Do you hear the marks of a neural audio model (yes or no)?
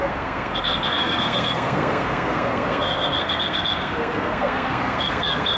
yes